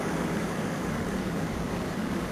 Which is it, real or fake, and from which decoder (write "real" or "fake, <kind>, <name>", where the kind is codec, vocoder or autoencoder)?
fake, codec, DAC